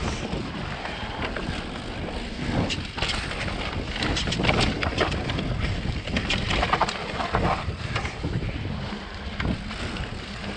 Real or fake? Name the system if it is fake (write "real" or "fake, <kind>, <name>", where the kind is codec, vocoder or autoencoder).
real